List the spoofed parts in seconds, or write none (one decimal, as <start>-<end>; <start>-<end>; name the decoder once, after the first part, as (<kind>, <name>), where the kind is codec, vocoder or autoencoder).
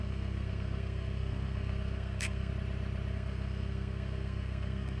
0.0-2.5 (codec, SNAC); 3.1-5.0